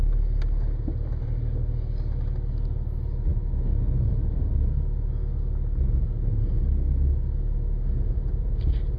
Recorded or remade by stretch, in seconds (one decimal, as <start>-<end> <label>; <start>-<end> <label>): 0.0-9.0 recorded